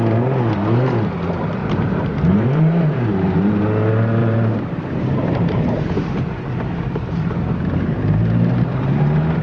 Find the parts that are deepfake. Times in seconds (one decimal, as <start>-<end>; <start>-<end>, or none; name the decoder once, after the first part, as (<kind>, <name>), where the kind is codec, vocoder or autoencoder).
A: 1.6-3.6 (vocoder, BigVGAN v2); 4.2-8.2